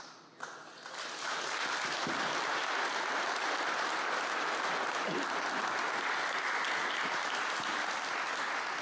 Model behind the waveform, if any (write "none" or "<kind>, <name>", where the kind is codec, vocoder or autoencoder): none